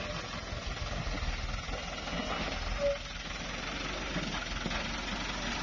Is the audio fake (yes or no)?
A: no